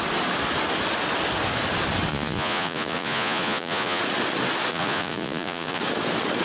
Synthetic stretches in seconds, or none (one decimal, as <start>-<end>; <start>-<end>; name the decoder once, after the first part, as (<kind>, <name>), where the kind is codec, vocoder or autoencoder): 2.1-4.0 (vocoder, Vocos); 4.7-5.8

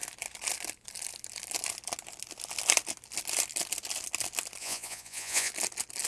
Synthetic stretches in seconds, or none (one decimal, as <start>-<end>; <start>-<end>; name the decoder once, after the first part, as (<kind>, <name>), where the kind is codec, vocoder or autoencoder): 4.6-5.5 (vocoder, Vocos)

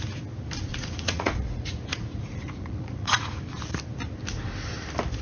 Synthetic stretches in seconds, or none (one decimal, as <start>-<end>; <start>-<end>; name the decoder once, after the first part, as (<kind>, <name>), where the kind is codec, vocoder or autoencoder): 0.7-3.4 (vocoder, Vocos)